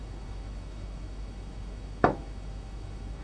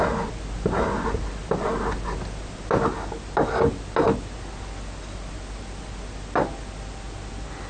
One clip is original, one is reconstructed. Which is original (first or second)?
second